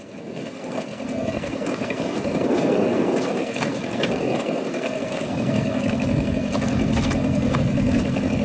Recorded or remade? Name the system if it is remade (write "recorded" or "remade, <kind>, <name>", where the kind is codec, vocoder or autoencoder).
remade, codec, SNAC